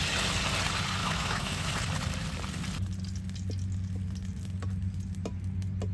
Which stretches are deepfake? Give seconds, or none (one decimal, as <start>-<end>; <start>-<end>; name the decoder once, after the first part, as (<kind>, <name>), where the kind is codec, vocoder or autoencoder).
1.0-1.7 (autoencoder, DAC-VAE)